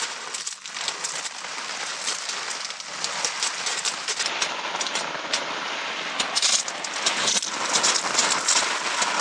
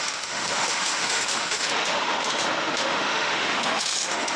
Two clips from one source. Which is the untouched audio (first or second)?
first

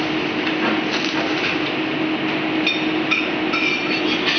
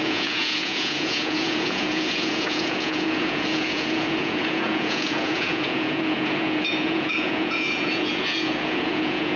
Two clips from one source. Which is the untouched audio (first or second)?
first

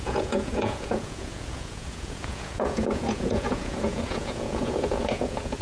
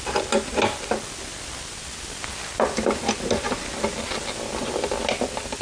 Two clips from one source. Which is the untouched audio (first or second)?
second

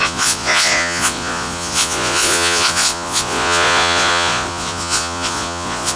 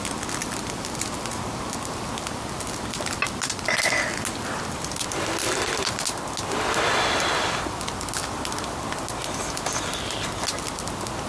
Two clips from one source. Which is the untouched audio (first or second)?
second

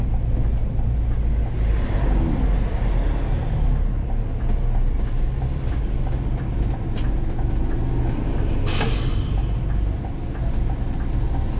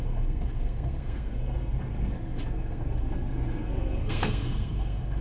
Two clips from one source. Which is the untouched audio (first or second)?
first